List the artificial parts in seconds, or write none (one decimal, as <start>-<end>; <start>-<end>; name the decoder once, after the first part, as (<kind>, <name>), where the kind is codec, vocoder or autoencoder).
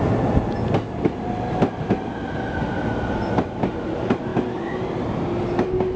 none